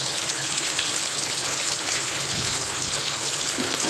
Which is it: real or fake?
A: fake